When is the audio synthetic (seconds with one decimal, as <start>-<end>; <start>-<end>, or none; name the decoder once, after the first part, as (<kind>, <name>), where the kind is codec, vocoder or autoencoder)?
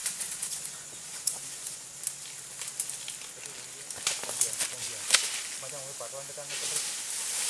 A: 0.0-1.9 (vocoder, Vocos)